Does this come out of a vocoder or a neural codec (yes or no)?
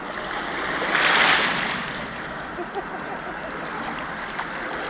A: no